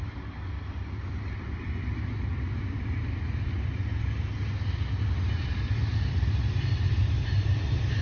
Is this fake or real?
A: real